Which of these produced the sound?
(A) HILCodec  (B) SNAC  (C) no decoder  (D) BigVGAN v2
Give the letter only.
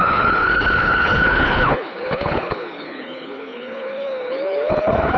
A